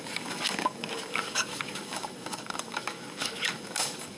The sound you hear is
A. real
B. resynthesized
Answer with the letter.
B